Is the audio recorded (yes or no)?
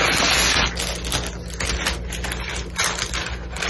yes